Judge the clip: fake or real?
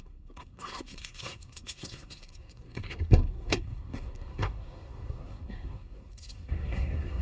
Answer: fake